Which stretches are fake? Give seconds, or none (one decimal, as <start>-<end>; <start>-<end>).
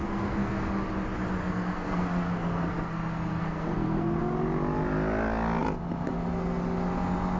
0.0-0.7; 1.4-4.2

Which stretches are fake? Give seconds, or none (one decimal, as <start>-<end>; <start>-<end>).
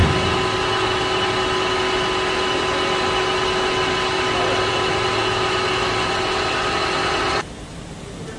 none